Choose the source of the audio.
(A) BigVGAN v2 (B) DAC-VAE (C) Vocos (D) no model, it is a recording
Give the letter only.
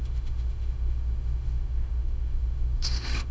B